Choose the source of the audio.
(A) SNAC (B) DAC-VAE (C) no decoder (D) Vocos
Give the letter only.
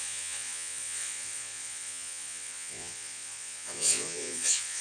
D